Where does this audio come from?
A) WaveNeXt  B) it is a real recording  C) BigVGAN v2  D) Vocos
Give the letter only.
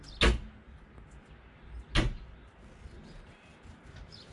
B